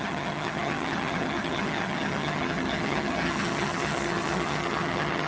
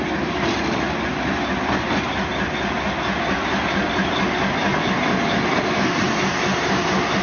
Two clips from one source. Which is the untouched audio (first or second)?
second